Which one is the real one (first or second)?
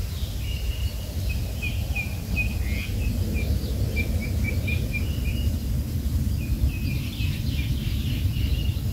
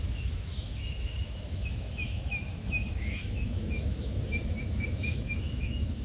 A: first